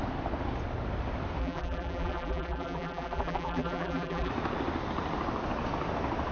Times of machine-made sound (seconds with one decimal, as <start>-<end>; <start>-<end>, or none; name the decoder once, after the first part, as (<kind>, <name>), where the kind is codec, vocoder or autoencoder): 1.4-4.3 (vocoder, BigVGAN v2)